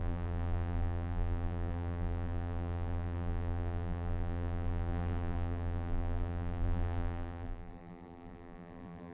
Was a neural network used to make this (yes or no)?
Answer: yes